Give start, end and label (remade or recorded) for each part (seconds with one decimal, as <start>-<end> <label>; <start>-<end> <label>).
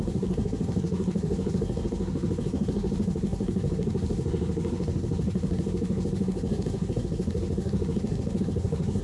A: 0.0-9.0 remade